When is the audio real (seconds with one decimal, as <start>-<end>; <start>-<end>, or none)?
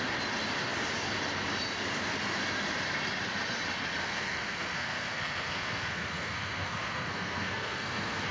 0.0-4.0